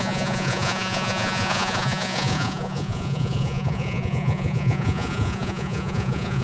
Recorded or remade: remade